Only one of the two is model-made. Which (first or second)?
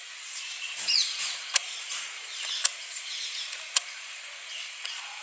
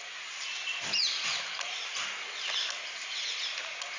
first